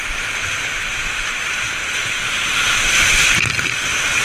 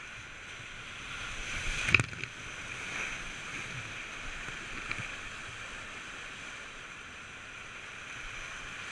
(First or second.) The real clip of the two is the second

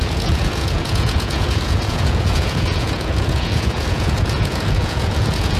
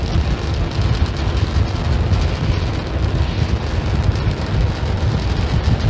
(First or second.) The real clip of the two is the second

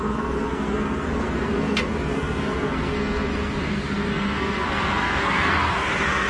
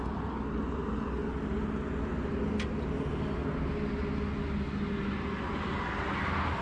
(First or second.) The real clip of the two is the second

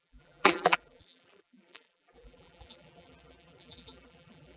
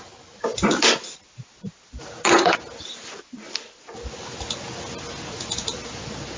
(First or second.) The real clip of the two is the second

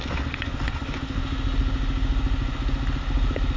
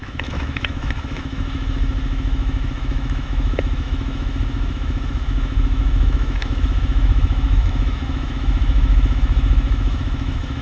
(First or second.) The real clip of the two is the first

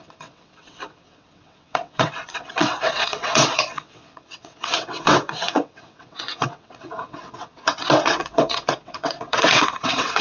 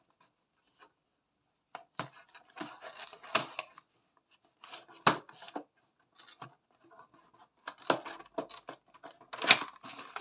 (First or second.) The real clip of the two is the second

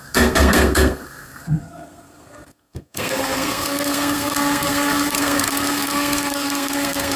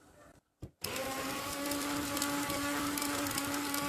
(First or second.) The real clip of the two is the second